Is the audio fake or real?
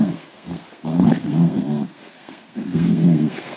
fake